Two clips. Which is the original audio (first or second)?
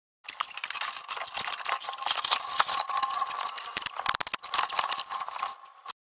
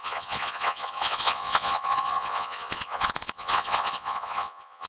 first